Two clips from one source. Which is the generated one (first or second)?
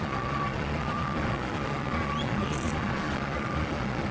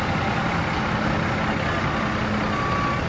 first